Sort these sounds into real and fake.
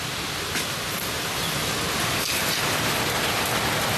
real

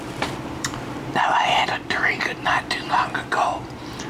fake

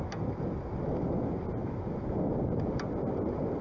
real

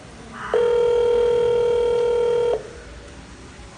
real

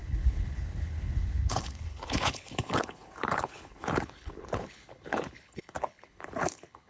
fake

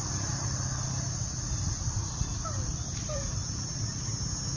real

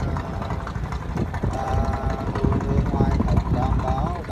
fake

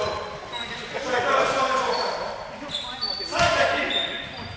real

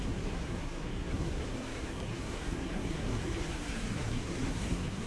fake